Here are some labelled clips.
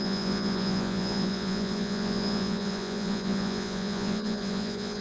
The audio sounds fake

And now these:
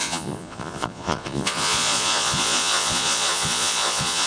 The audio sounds fake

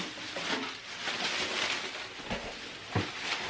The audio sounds real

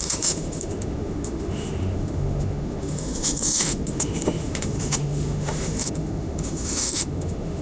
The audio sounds fake